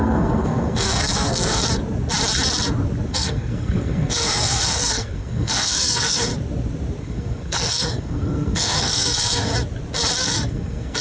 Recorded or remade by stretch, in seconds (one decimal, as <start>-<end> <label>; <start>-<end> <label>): 0.0-1.6 remade; 1.6-3.1 recorded; 3.1-6.3 remade; 6.3-7.0 recorded; 7.0-9.5 remade; 9.5-10.2 recorded; 10.2-11.0 remade